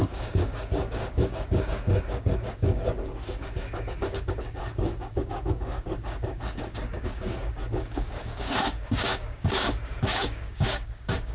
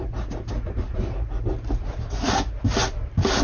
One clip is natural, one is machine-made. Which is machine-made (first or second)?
first